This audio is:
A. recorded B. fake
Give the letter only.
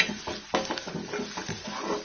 A